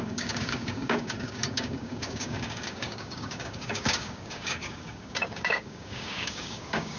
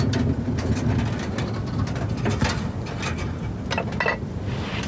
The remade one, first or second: first